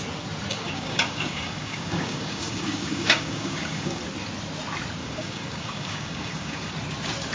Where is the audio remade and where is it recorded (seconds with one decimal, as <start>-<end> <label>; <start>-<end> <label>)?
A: 0.0-0.5 recorded; 0.5-4.0 remade; 4.0-5.0 recorded; 5.0-6.7 remade; 6.7-7.3 recorded